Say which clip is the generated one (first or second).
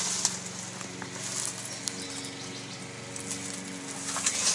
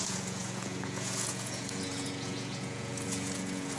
second